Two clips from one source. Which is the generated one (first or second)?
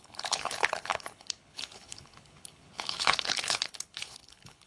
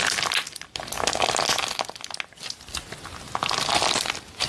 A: first